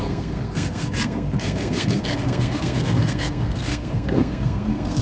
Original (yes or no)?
no